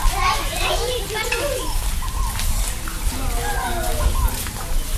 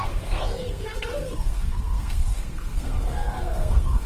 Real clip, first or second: first